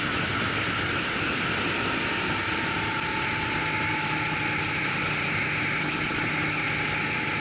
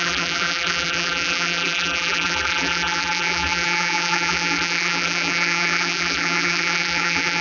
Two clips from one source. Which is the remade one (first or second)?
second